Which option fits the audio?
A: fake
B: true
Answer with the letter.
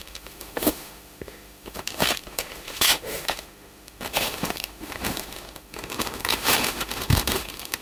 A